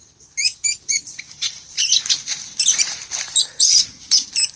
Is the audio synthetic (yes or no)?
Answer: yes